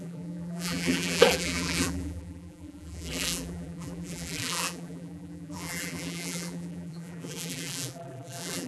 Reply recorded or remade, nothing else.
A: remade